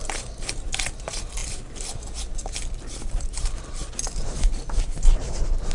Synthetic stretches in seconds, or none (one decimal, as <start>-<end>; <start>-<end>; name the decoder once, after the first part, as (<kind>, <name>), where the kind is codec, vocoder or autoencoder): none